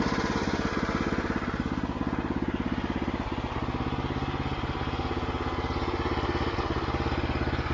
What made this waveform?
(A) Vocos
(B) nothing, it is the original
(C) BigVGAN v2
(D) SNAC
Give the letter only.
B